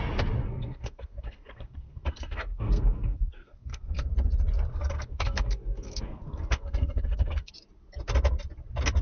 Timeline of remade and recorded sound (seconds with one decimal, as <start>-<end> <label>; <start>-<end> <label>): 0.0-0.4 recorded; 0.4-4.1 remade; 4.1-4.7 recorded; 4.7-7.5 remade; 7.5-9.0 recorded